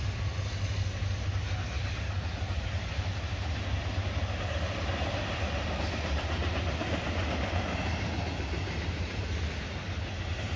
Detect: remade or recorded recorded